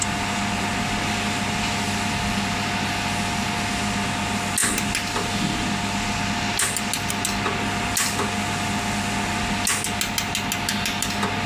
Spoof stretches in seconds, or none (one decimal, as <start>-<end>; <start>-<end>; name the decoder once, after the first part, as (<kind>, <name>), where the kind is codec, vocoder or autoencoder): none